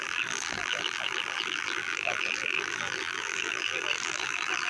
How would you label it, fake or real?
fake